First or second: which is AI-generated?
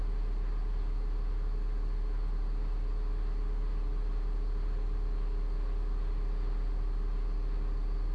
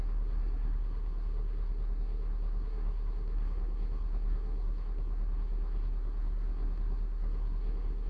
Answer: second